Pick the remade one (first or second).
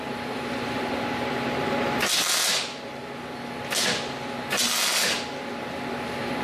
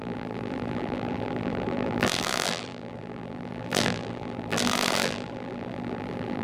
second